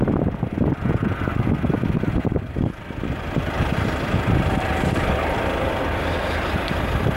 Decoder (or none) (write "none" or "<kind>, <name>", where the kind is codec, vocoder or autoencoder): vocoder, BigVGAN v2